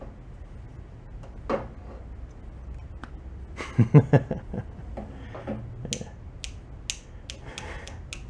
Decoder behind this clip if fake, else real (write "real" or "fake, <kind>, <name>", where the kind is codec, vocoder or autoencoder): real